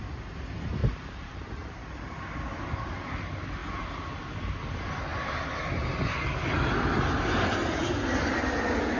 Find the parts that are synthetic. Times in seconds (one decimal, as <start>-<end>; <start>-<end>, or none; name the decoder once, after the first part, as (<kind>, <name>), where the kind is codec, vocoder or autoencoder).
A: 0.8-2.2 (vocoder, BigVGAN v2)

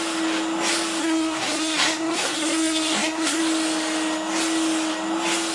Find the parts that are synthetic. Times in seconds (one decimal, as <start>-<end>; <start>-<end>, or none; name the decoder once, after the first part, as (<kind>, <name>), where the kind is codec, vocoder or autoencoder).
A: 1.0-3.4 (codec, SNAC)

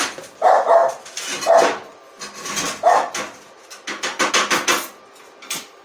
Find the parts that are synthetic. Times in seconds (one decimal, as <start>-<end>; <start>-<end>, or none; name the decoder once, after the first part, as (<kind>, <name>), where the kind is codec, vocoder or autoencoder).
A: none

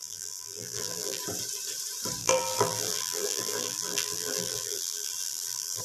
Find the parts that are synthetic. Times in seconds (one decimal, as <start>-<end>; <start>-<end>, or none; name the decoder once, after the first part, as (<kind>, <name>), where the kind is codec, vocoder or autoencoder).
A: 0.0-1.2 (vocoder, BigVGAN v2); 2.2-5.8

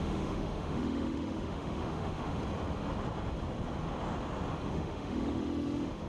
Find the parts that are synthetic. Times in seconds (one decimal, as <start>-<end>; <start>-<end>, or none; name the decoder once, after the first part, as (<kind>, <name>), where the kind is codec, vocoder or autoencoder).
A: 0.0-2.4 (autoencoder, DAC-VAE); 4.7-6.1

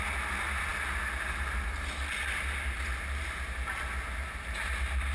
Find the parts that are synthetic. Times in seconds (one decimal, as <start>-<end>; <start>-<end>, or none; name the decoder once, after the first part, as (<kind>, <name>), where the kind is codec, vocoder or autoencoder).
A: none